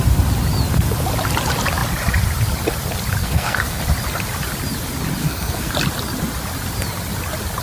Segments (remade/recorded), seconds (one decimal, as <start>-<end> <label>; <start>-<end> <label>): 0.0-3.2 recorded; 3.2-3.8 remade; 3.8-5.2 recorded; 5.2-5.7 remade; 5.7-7.6 recorded